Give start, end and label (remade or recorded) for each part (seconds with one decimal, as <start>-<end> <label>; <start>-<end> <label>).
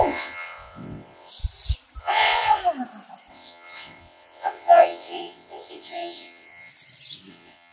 0.0-1.3 remade; 1.3-2.0 recorded; 2.0-2.6 remade; 2.6-3.3 recorded; 3.3-6.7 remade; 6.7-7.3 recorded; 7.3-7.7 remade